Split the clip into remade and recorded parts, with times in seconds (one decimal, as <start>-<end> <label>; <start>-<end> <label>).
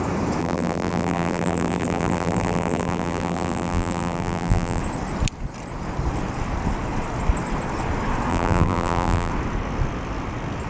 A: 0.0-0.4 recorded; 0.4-4.8 remade; 4.8-8.3 recorded; 8.3-9.3 remade; 9.3-10.7 recorded